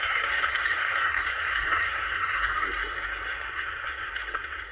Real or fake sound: fake